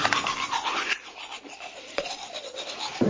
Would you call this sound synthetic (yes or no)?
yes